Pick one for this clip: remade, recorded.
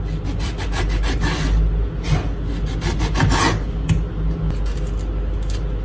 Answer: recorded